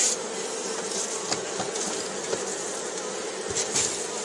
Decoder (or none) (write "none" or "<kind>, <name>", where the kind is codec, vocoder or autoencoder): none